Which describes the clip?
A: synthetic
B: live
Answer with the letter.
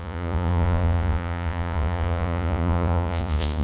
A